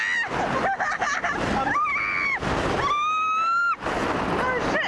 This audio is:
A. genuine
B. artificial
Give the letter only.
A